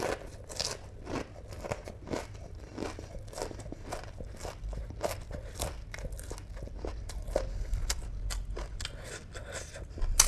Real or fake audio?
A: real